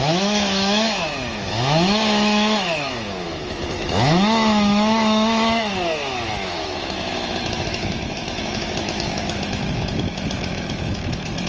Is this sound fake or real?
fake